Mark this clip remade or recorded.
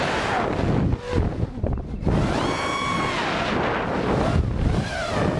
recorded